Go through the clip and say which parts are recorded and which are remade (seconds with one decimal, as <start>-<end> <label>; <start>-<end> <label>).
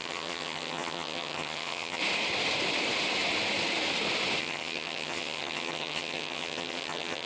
0.0-2.0 remade; 2.0-4.4 recorded; 4.4-7.3 remade